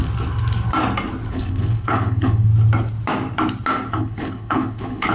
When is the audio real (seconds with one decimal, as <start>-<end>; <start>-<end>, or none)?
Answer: 0.0-1.3; 2.5-3.9

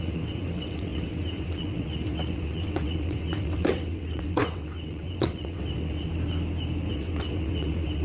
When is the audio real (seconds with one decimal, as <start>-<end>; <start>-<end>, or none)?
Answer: 6.1-6.9

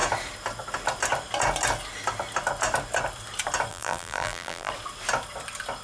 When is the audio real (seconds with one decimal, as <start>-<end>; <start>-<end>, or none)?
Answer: 0.0-3.7; 4.7-5.8